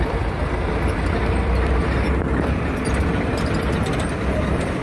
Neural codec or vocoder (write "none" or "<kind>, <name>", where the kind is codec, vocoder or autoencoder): vocoder, BigVGAN v2